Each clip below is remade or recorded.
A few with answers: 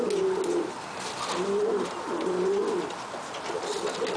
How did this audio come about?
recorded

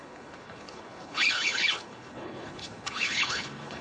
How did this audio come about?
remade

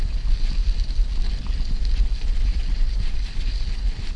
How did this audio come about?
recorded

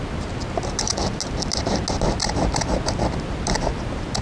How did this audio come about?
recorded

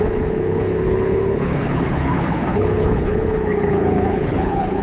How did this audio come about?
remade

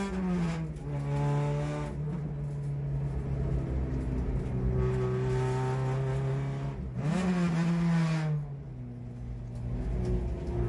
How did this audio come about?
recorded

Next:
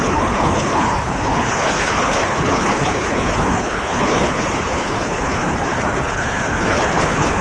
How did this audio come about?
remade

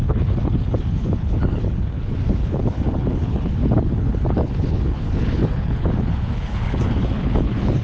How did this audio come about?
remade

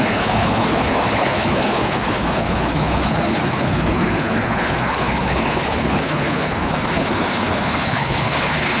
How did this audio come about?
remade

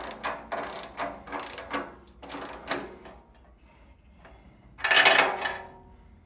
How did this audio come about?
recorded